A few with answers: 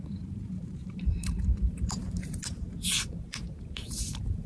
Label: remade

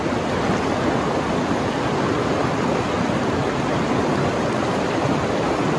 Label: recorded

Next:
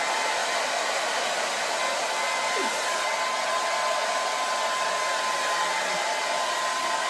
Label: recorded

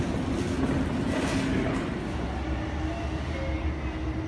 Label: recorded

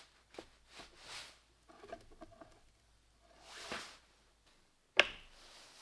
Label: recorded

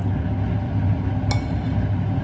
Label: recorded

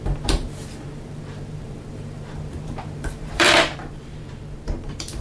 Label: remade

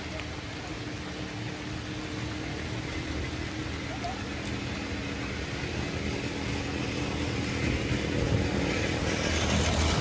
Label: recorded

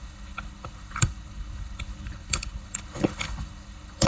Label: remade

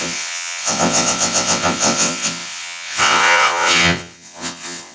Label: remade